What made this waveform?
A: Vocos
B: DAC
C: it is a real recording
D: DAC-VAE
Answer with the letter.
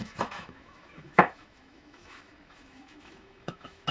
D